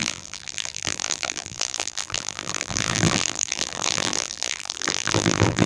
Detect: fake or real fake